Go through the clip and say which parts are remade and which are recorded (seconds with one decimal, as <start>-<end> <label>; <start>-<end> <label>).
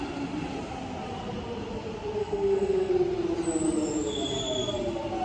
0.0-2.2 recorded; 2.2-2.9 remade; 2.9-5.2 recorded